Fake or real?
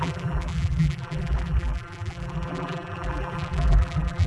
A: fake